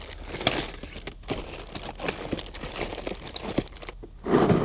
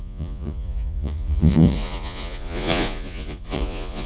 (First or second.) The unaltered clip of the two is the first